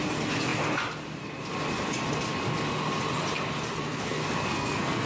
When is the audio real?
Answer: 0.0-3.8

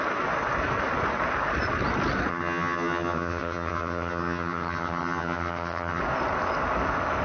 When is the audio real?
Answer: 0.0-2.3; 6.0-7.2

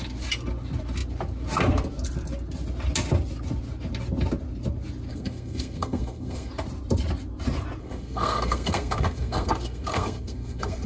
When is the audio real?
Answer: 0.0-5.1; 6.5-7.8

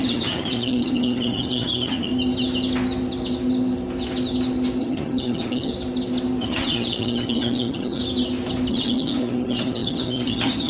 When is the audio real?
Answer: 2.1-4.8; 5.7-6.4; 8.0-8.7

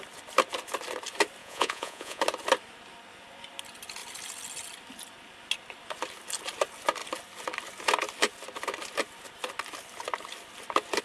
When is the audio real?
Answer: 0.0-1.4; 2.2-11.0

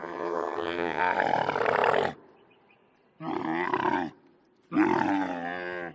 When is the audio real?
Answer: 1.0-5.9